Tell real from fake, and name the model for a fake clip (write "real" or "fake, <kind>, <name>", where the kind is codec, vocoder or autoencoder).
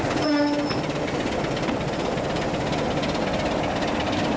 real